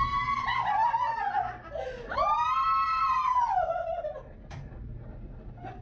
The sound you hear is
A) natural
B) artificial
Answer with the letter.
A